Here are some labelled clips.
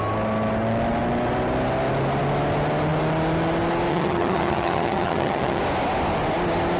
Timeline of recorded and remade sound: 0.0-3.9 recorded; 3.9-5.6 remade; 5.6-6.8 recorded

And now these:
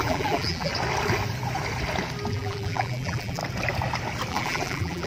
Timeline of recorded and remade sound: 0.0-0.7 remade; 0.7-2.3 recorded; 2.3-3.4 remade; 3.4-4.3 recorded; 4.3-5.1 remade

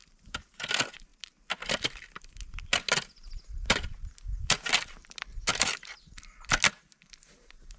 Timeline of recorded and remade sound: 0.0-0.6 remade; 0.6-5.5 recorded; 5.5-6.1 remade; 6.1-7.8 recorded

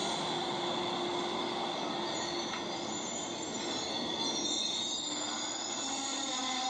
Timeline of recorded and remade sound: 0.0-6.7 recorded